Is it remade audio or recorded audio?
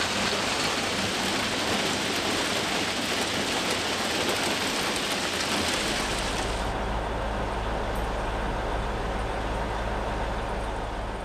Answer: recorded